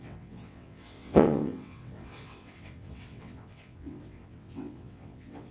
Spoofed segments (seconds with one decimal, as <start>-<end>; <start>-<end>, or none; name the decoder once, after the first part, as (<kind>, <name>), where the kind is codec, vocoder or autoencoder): 0.0-5.5 (vocoder, WaveNeXt)